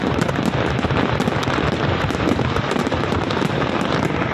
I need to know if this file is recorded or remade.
recorded